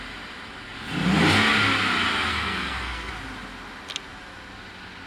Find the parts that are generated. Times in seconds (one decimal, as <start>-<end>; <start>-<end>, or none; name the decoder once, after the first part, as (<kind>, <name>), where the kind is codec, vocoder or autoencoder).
2.3-3.1 (codec, SNAC)